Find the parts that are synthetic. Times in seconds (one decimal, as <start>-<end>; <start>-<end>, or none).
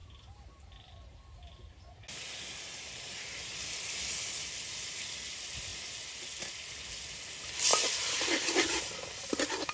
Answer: none